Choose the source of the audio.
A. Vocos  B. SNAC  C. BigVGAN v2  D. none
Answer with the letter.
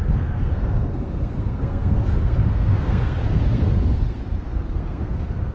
B